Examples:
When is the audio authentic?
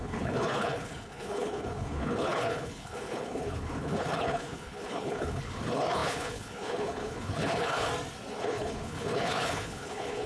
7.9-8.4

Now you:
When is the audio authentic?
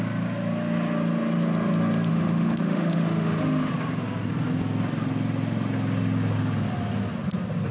0.0-2.1; 3.7-7.7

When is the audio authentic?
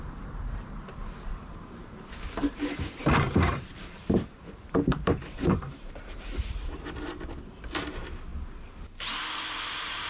0.0-1.3; 6.3-10.1